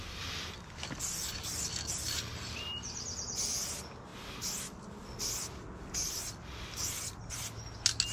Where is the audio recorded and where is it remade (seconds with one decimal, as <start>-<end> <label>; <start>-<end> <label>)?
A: 0.0-8.1 recorded